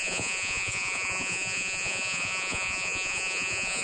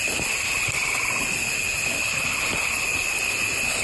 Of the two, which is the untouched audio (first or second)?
second